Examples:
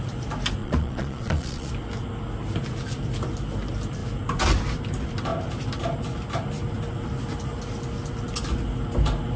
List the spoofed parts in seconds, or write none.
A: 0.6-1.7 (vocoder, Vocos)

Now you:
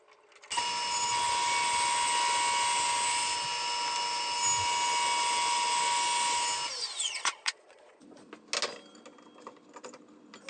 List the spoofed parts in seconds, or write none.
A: 6.8-8.3 (vocoder, Vocos)

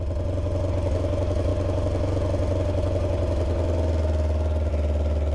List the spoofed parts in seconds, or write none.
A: none

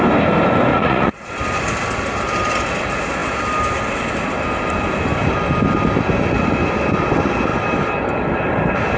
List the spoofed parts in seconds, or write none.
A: 0.7-1.3 (vocoder, Vocos)

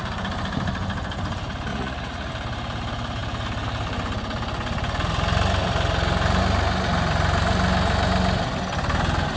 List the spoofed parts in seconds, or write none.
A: 1.7-2.3 (vocoder, Vocos)

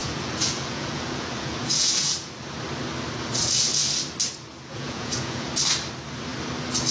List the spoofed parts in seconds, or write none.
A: 0.0-2.3 (vocoder, Vocos); 4.5-5.5

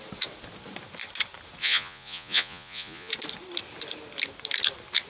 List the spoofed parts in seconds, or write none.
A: 1.6-3.1 (vocoder, Vocos)

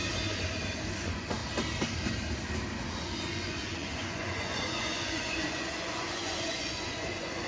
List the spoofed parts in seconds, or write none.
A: 0.9-1.4 (vocoder, Vocos); 2.9-7.5